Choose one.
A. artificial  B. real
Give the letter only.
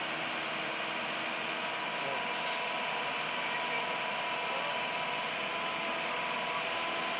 B